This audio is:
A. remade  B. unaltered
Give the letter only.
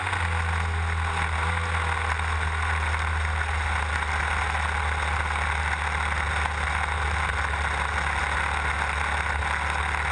B